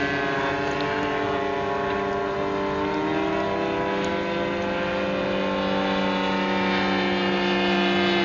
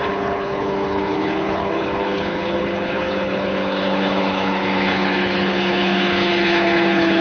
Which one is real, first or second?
first